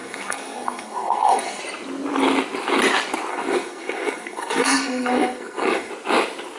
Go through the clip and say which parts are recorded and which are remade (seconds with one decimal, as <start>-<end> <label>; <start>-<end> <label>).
0.0-1.6 remade; 1.6-3.3 recorded; 3.3-5.9 remade; 5.9-6.6 recorded